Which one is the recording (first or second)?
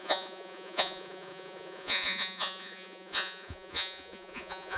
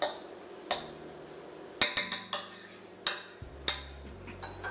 second